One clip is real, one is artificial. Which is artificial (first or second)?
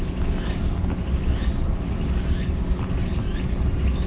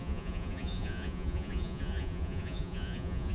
second